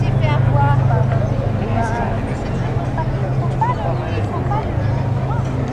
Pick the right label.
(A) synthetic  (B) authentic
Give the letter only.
B